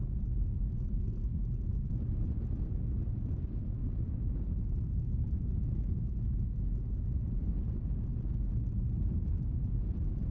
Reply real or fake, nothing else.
real